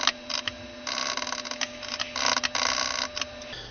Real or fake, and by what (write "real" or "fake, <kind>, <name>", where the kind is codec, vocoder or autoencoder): real